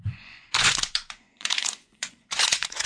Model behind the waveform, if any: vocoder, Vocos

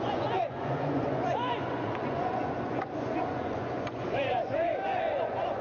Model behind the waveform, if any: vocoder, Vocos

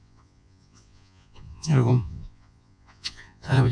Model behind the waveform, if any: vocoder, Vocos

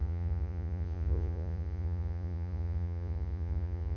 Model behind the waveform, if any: vocoder, Vocos